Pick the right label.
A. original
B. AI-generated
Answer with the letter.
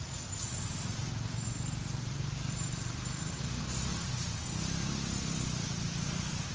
A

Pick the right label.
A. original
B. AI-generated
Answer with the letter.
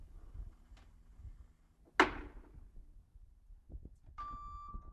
A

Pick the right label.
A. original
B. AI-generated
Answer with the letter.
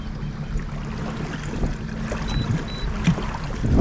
A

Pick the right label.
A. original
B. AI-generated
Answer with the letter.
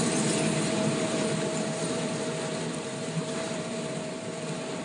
B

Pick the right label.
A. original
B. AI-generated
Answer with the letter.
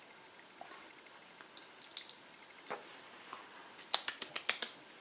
A